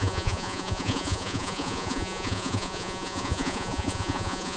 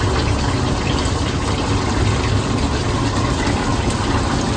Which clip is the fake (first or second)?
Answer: first